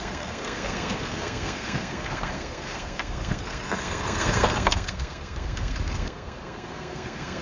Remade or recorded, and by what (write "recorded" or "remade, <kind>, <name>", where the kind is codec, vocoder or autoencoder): remade, codec, SNAC